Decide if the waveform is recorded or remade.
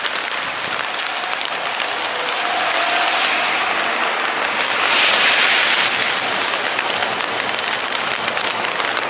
remade